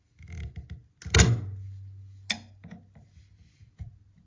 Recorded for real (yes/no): yes